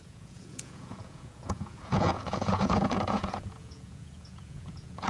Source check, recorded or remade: remade